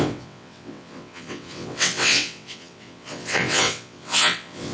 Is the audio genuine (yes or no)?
no